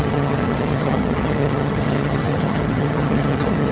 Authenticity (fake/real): fake